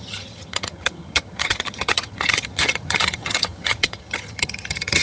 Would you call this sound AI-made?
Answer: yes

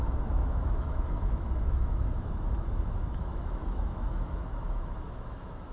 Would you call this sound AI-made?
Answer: yes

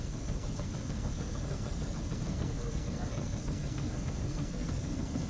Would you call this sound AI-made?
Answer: yes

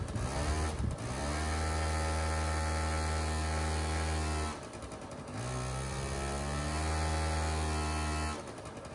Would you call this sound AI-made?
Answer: no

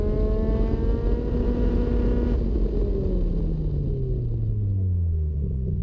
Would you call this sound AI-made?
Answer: no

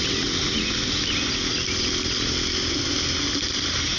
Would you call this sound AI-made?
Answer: no